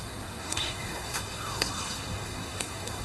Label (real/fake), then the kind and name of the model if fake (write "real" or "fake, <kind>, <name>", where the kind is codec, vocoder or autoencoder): fake, codec, SNAC